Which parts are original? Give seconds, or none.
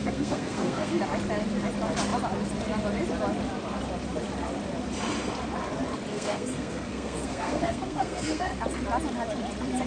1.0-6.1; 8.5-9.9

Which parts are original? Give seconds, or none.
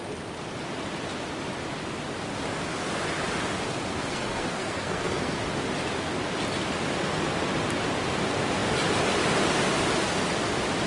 0.0-3.9; 5.4-10.9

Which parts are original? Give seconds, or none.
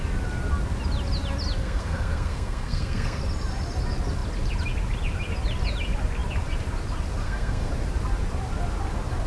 0.0-1.6; 3.2-7.2; 7.7-9.3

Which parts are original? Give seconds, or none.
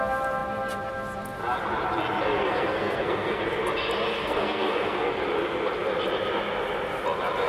0.0-2.4; 3.4-4.2; 5.1-7.5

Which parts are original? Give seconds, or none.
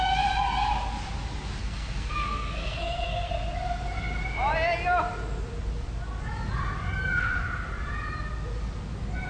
0.0-1.6; 3.3-9.3